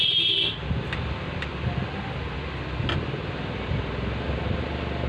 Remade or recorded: recorded